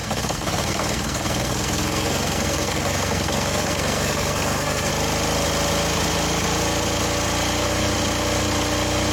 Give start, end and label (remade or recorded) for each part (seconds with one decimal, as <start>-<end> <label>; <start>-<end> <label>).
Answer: 0.0-4.9 remade; 4.9-9.1 recorded